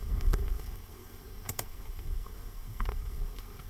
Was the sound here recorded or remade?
remade